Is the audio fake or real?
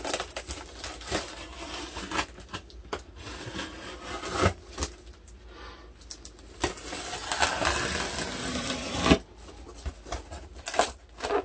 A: real